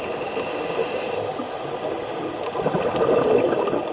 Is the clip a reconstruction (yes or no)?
no